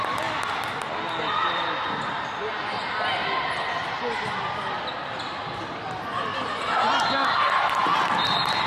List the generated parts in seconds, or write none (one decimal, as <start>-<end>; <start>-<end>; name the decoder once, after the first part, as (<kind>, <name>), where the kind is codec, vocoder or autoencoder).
1.4-2.1 (vocoder, BigVGAN v2); 6.3-8.7